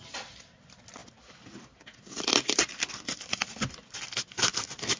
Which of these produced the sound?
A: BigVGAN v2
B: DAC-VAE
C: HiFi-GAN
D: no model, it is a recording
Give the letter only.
D